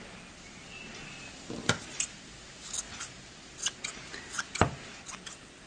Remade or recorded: recorded